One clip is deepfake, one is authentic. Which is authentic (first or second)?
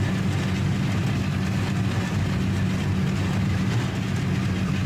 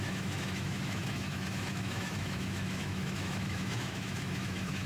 first